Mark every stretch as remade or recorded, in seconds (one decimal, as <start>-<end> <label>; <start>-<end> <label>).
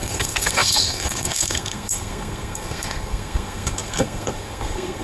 0.0-5.0 remade